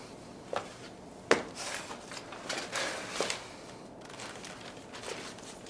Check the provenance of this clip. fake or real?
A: real